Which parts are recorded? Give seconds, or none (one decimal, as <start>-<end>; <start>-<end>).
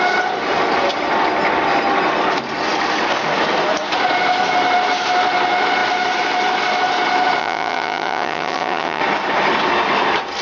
0.0-7.4; 9.0-10.4